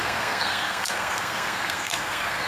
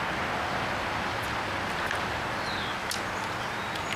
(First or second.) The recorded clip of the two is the second